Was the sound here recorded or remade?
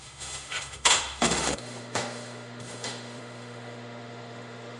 remade